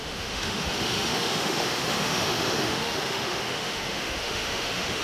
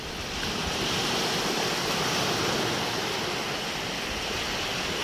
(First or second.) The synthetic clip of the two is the first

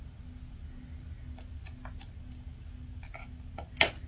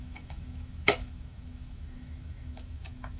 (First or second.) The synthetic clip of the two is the second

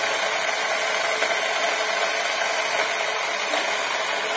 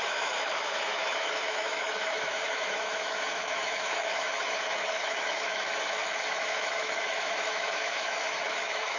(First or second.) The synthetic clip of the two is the second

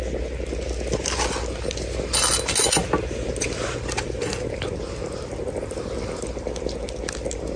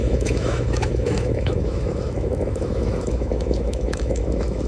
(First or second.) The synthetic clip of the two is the second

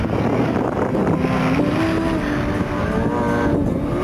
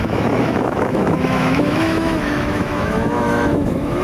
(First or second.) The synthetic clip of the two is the second